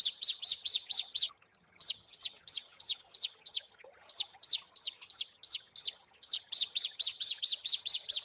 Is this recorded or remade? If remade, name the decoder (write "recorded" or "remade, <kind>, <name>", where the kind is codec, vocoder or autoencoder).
remade, vocoder, HiFi-GAN